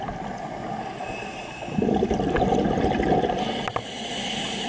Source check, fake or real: real